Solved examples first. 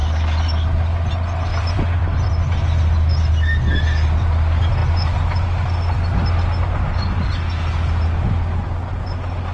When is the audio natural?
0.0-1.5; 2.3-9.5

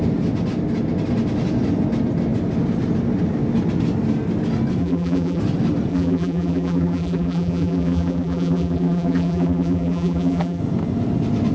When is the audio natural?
0.0-4.8; 5.4-5.9; 10.6-11.5

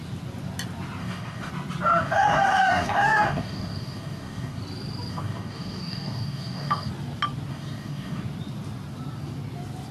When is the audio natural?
0.0-1.0; 1.5-1.9; 4.6-5.1; 6.9-7.5; 8.2-9.9

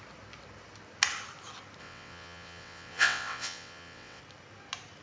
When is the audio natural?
0.0-1.8; 4.2-5.0

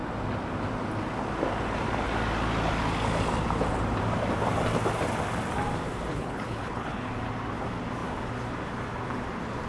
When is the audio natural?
0.0-6.1; 7.1-9.7

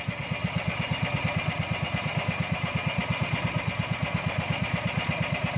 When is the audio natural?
0.0-5.6